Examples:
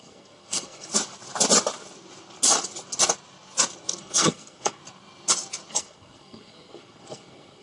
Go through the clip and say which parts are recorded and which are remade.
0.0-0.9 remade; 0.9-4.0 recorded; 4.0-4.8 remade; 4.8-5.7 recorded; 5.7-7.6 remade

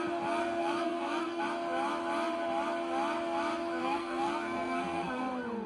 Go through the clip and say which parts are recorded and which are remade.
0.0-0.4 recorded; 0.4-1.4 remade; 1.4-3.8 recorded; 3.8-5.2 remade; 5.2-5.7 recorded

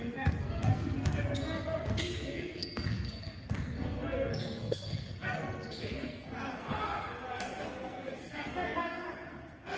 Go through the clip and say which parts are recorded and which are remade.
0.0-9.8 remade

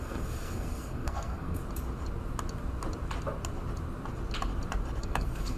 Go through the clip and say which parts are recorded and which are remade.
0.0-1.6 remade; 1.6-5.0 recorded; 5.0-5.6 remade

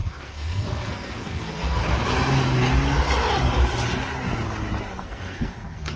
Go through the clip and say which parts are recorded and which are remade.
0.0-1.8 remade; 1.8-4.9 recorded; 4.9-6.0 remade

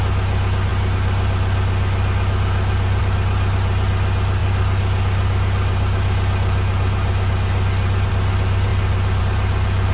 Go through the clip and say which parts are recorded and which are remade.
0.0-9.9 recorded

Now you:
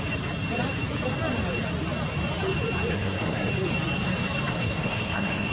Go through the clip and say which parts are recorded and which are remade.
0.0-2.9 recorded; 2.9-3.5 remade; 3.5-4.5 recorded; 4.5-5.5 remade

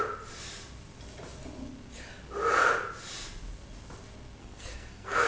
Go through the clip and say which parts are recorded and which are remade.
0.0-4.4 recorded; 4.4-5.3 remade